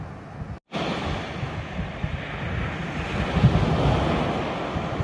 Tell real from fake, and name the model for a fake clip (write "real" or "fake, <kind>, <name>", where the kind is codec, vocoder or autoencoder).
real